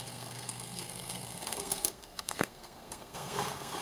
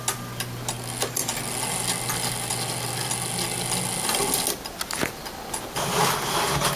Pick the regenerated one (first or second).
first